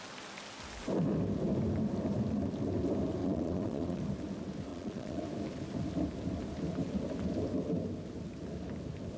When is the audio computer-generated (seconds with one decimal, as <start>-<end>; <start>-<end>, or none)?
3.2-4.0; 4.7-5.2